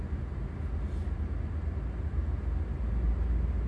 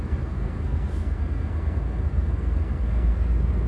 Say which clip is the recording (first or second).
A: first